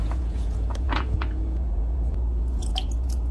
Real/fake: fake